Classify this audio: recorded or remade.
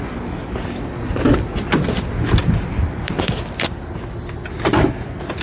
recorded